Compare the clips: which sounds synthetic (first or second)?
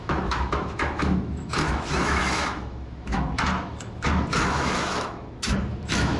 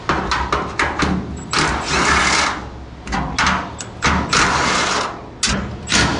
first